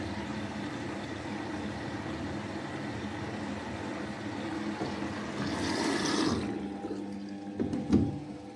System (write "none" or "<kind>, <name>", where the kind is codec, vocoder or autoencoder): none